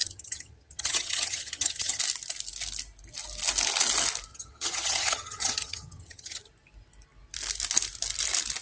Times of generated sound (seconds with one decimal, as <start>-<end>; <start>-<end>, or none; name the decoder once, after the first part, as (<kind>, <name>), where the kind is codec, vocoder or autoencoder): 0.0-2.0 (vocoder, HiFi-GAN); 4.3-6.4